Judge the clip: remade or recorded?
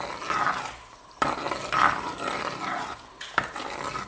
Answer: recorded